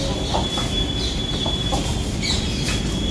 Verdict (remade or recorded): recorded